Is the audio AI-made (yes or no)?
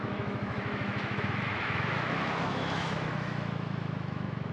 yes